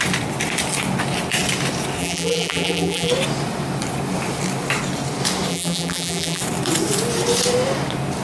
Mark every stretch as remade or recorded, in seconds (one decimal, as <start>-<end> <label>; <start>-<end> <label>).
0.0-2.0 recorded; 2.0-3.1 remade; 3.1-5.5 recorded; 5.5-6.4 remade; 6.4-8.2 recorded